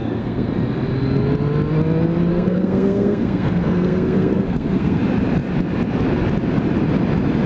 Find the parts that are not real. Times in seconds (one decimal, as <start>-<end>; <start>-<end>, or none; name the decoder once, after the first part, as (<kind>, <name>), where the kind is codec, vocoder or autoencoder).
0.0-0.5 (codec, SNAC); 2.3-5.0